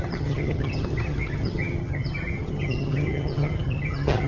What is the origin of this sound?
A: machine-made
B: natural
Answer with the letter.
A